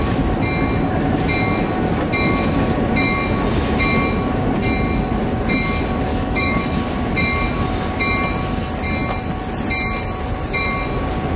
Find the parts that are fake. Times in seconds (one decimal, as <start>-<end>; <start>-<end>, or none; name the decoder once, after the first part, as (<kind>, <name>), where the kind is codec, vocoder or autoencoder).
6.1-6.6 (autoencoder, DAC-VAE)